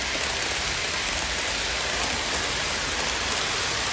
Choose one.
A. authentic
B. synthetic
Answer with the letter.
A